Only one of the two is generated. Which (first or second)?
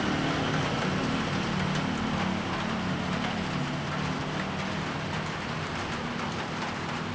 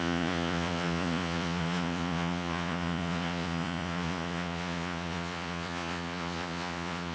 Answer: second